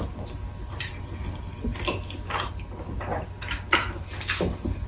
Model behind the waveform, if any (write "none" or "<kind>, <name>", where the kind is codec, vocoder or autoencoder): none